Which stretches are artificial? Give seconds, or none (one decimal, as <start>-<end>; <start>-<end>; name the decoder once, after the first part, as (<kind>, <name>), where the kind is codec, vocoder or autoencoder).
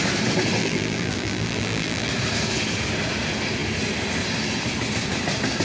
0.6-2.1 (vocoder, BigVGAN v2)